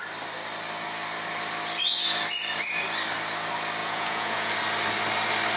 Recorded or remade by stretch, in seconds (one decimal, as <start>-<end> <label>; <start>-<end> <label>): 0.0-3.8 recorded; 3.8-4.5 remade; 4.5-5.6 recorded